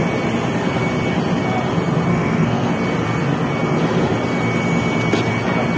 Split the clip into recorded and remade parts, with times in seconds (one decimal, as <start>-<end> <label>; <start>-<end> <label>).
0.0-2.1 recorded; 2.1-2.7 remade; 2.7-5.8 recorded